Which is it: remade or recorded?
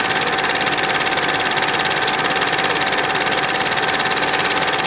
recorded